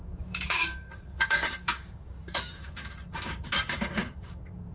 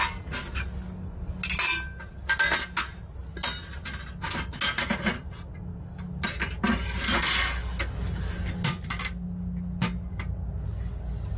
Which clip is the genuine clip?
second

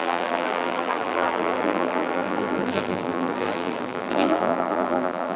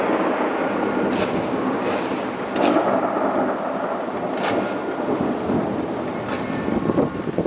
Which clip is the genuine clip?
second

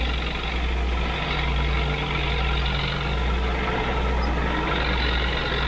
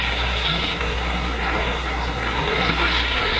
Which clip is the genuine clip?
first